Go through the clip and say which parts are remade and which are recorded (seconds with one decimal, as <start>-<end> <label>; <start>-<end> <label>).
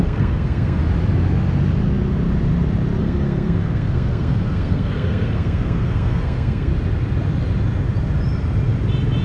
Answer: 0.0-0.8 remade; 0.8-3.0 recorded; 3.0-6.7 remade; 6.7-9.2 recorded